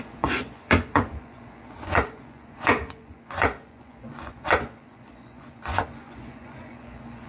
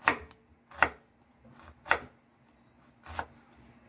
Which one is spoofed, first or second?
first